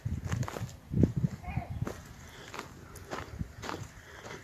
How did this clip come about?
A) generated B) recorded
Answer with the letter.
B